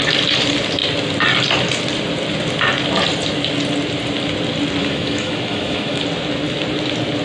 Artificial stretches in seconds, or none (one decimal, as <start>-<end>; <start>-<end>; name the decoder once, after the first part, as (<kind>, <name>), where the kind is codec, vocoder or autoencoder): 4.8-6.0 (autoencoder, DAC-VAE)